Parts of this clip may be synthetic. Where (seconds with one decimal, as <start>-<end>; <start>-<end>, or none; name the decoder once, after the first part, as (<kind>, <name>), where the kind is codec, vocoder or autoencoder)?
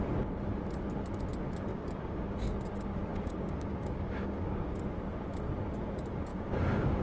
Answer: 1.7-2.3 (codec, DAC); 3.1-4.8; 6.3-7.0